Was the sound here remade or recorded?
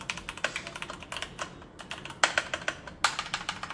recorded